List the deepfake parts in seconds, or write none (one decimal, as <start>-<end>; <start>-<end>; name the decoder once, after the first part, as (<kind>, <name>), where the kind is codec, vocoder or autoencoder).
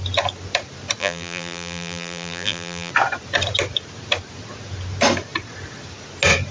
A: 1.0-2.9 (vocoder, BigVGAN v2)